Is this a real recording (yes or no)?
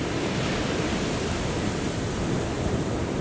yes